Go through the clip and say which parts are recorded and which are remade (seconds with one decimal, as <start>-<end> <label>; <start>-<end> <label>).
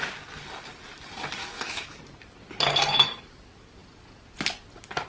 0.0-1.4 recorded; 1.4-2.0 remade; 2.0-5.1 recorded